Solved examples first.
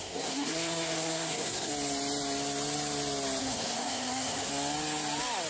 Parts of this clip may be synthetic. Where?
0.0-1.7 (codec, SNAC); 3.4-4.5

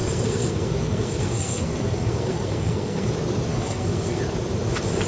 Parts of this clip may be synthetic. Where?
0.0-3.1 (codec, SNAC); 3.5-4.2

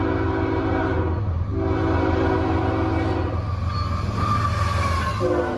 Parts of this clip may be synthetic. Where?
none